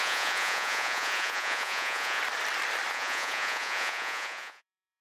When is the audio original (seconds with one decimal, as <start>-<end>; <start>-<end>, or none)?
2.2-2.9